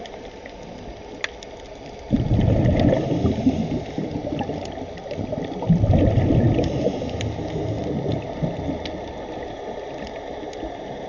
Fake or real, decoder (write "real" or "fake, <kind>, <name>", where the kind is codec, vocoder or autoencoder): real